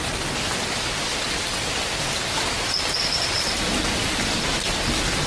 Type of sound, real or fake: real